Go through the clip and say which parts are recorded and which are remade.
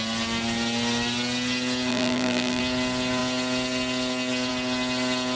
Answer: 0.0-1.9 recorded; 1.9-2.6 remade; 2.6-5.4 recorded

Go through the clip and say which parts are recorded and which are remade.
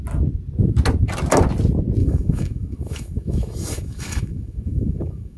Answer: 0.0-2.0 recorded; 2.0-5.4 remade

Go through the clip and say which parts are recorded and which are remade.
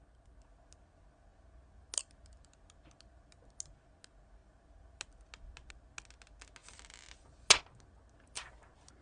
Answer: 0.0-9.0 recorded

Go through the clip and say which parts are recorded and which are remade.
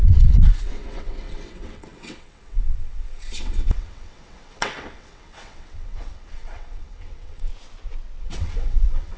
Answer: 0.0-7.5 remade; 7.5-8.2 recorded; 8.2-9.2 remade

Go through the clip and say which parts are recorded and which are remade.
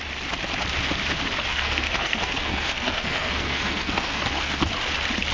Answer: 0.0-1.5 recorded; 1.5-4.7 remade; 4.7-5.3 recorded